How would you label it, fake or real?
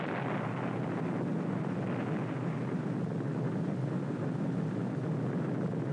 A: real